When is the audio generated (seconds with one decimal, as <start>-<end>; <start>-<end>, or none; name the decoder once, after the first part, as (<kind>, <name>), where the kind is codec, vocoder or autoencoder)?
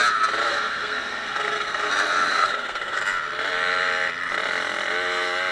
0.5-1.9 (codec, SNAC); 2.3-3.0